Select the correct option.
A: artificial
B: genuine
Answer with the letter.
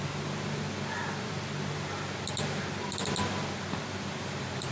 B